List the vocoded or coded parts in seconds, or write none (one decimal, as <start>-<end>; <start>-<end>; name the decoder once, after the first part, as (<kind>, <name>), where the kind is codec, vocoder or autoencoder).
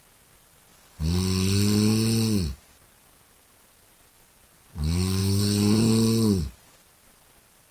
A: 5.2-5.9 (vocoder, BigVGAN v2)